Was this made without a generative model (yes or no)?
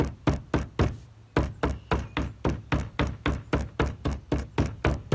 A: yes